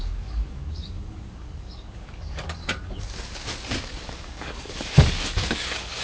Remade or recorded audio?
remade